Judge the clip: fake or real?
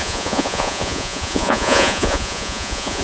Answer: fake